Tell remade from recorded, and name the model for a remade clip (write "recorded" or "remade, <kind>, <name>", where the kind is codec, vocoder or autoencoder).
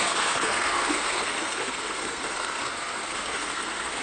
remade, codec, SNAC